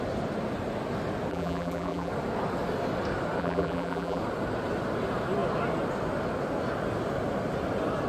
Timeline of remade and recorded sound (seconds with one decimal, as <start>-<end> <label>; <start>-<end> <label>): 0.0-1.3 recorded; 1.3-2.1 remade; 2.1-3.4 recorded; 3.4-4.2 remade; 4.2-8.1 recorded